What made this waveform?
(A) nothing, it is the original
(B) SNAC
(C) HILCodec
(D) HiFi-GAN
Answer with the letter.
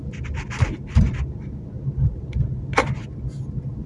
A